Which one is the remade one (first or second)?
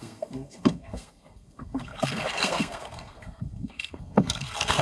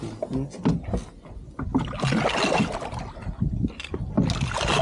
first